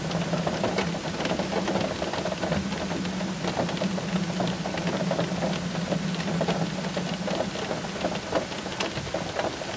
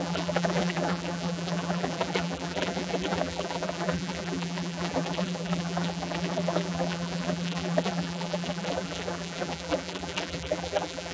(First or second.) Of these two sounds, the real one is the first